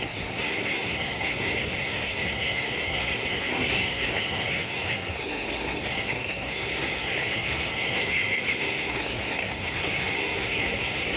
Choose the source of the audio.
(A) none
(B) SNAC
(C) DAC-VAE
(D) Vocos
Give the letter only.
B